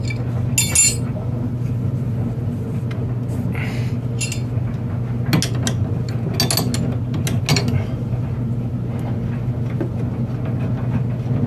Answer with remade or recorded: recorded